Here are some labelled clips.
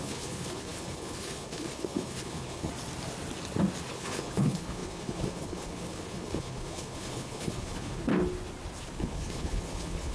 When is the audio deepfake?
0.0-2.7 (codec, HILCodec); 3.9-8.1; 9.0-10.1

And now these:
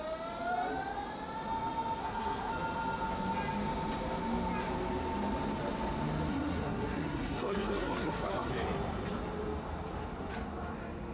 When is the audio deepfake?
2.0-2.5 (codec, SNAC); 6.3-8.5

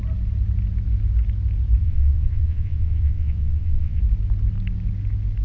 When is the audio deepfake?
1.8-4.0 (vocoder, WaveNeXt)

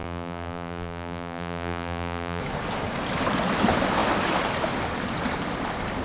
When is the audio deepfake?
0.0-2.4 (vocoder, BigVGAN v2)

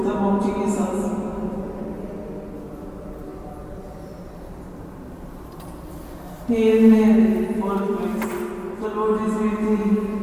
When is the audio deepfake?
3.3-8.0 (vocoder, BigVGAN v2)

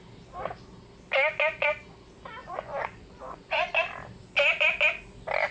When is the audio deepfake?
2.4-3.7 (vocoder, Vocos)